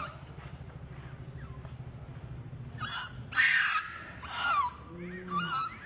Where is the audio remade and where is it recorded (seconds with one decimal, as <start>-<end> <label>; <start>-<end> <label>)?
0.0-5.9 recorded